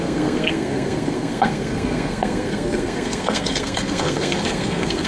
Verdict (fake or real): fake